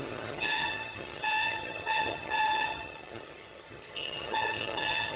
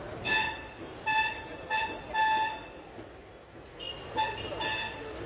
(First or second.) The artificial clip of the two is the first